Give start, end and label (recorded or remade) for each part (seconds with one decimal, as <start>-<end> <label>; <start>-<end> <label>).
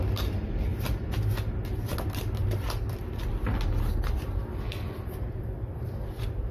0.0-6.5 recorded